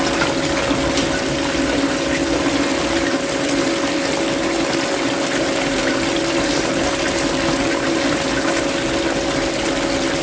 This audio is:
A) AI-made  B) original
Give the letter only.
B